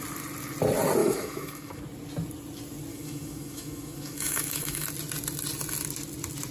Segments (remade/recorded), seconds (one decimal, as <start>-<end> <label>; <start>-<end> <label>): 0.0-1.0 recorded; 1.0-1.8 remade; 1.8-2.9 recorded; 2.9-4.9 remade; 4.9-6.5 recorded